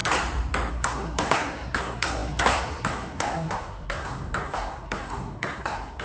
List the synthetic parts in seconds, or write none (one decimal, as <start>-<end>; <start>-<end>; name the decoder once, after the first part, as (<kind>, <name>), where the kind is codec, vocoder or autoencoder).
0.7-6.0 (codec, SNAC)